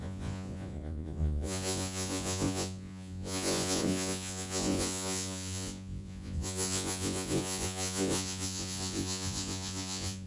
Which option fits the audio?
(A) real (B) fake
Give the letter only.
B